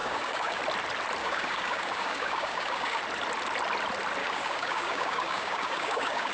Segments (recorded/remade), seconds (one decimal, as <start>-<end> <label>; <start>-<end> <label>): 0.0-0.6 remade; 0.6-1.2 recorded; 1.2-3.0 remade; 3.0-4.2 recorded; 4.2-6.3 remade